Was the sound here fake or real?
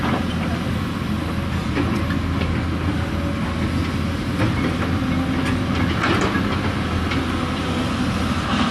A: real